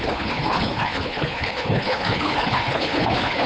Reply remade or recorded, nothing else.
remade